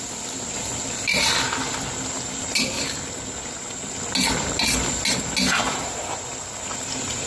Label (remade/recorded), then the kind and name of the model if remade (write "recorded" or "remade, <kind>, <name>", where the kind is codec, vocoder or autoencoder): recorded